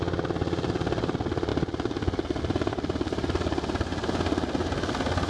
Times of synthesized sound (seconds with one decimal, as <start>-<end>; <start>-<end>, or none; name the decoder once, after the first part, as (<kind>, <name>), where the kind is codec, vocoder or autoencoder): none